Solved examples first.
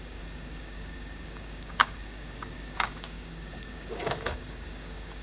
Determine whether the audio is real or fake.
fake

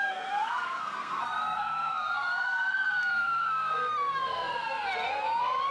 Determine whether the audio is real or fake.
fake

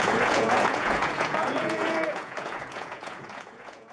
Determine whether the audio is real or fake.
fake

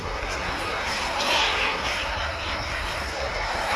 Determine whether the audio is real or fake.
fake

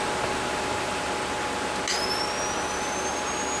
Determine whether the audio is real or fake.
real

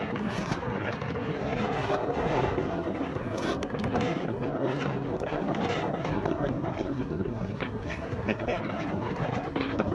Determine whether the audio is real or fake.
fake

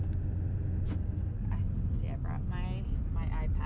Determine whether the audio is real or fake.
real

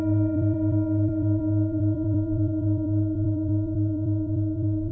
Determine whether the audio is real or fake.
fake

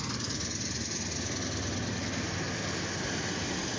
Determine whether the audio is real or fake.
real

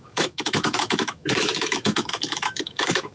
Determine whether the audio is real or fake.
fake